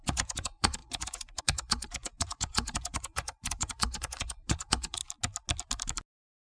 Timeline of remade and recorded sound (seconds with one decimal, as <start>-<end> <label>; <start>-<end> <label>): 0.0-5.0 remade; 5.0-6.6 recorded